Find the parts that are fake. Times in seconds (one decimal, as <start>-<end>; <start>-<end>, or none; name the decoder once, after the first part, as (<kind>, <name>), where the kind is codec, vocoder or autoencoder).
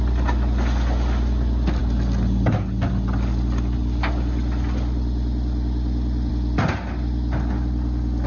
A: none